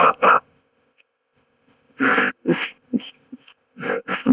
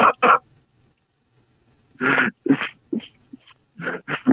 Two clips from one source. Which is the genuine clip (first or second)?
second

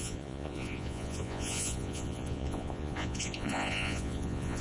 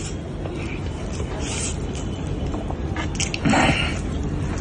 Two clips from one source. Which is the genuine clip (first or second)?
second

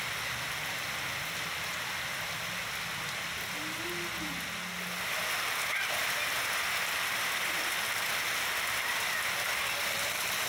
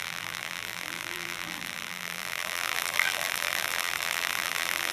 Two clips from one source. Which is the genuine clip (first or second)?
first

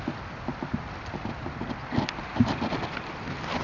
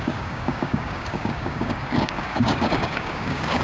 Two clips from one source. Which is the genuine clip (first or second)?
first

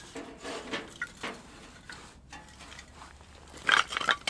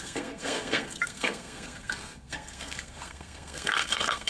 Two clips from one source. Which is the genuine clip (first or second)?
first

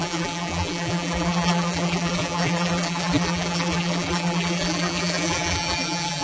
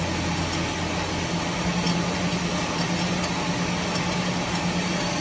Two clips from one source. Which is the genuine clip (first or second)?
second